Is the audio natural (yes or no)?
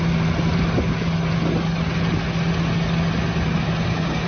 yes